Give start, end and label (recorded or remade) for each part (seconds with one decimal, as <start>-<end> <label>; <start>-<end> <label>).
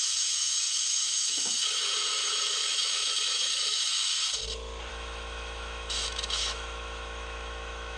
0.0-4.1 remade; 4.1-4.9 recorded; 4.9-8.0 remade